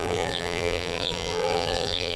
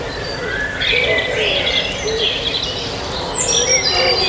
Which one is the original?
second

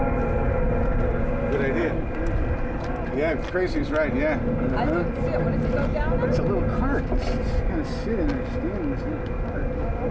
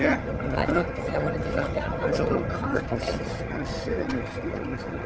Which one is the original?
first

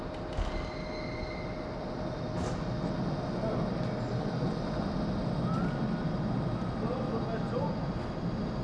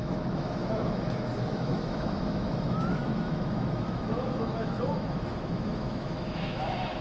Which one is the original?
first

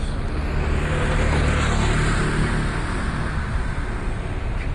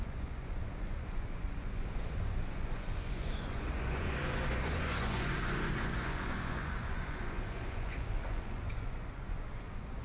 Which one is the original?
first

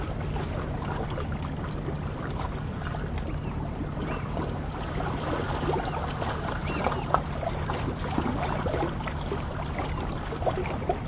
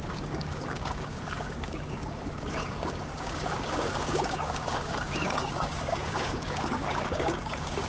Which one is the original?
first